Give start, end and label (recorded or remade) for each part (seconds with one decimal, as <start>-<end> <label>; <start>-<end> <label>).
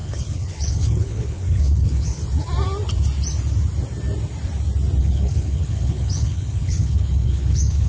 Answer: 0.0-2.2 remade; 2.2-5.0 recorded; 5.0-7.9 remade